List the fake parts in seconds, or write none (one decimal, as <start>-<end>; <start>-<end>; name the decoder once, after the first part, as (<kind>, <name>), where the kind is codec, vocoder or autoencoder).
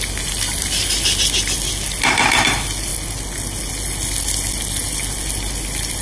none